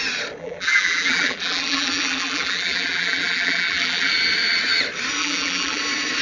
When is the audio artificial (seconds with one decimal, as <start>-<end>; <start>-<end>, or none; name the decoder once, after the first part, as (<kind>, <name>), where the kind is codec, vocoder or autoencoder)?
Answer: 0.4-4.1 (vocoder, BigVGAN v2); 5.2-5.8